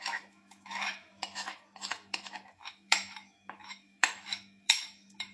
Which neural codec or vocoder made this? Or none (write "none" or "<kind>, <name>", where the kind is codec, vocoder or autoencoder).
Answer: autoencoder, DAC-VAE